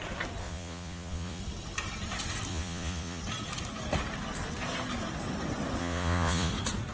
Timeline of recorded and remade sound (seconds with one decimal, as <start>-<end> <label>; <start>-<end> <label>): 0.0-0.4 recorded; 0.4-1.4 remade; 1.4-2.5 recorded; 2.5-3.2 remade; 3.2-5.8 recorded; 5.8-6.5 remade; 6.5-6.9 recorded